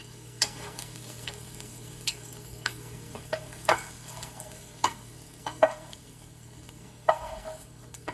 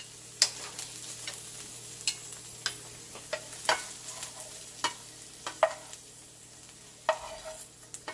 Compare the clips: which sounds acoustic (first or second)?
second